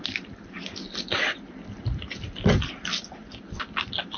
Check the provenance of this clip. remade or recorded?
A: recorded